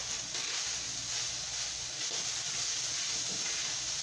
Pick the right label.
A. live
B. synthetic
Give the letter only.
A